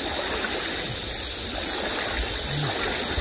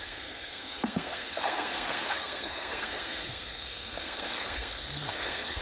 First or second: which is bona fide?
first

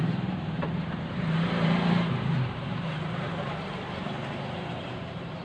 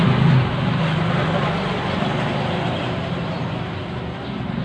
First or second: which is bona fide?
second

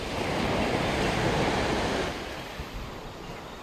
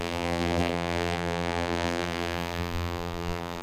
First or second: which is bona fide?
first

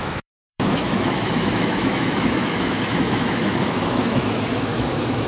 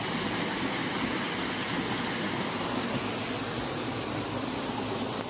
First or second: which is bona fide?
second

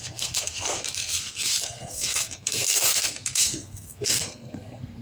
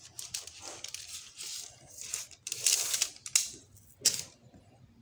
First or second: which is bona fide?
second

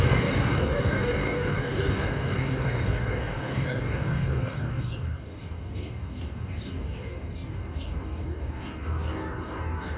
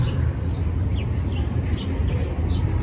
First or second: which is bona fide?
second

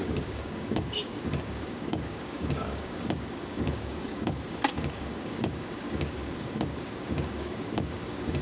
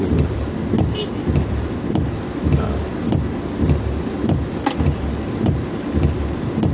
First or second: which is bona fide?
second